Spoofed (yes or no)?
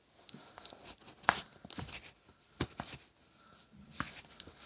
no